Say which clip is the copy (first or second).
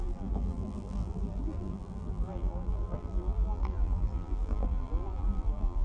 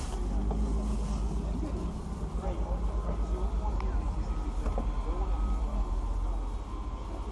first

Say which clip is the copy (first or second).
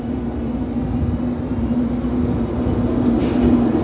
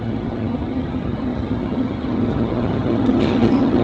second